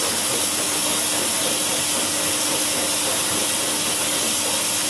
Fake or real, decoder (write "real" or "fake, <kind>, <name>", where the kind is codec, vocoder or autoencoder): real